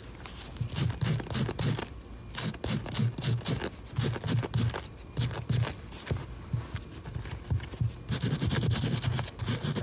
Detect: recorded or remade recorded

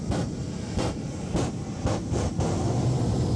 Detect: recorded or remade recorded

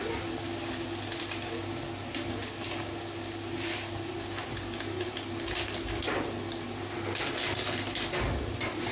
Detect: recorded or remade recorded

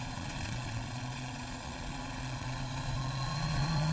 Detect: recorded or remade remade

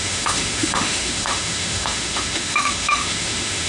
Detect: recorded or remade remade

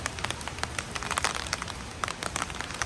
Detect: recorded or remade recorded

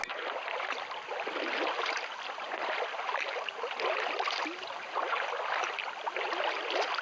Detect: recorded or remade recorded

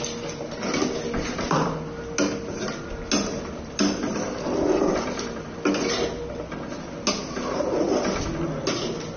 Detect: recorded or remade recorded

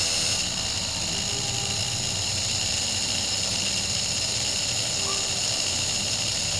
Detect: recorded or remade recorded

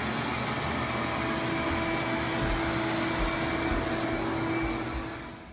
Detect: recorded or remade recorded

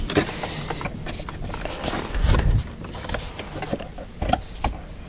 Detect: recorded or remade remade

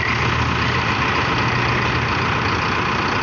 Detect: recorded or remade recorded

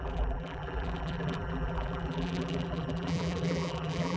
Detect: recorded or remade remade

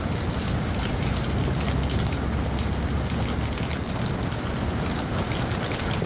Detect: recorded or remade recorded